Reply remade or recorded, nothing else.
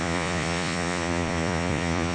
remade